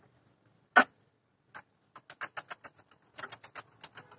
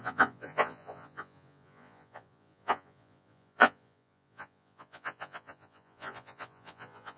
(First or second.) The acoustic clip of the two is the first